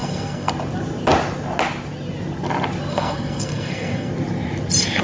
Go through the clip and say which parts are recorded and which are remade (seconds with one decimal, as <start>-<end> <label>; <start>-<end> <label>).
0.0-0.5 remade; 0.5-2.9 recorded; 2.9-4.1 remade; 4.1-5.0 recorded